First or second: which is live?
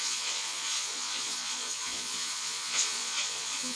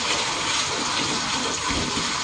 second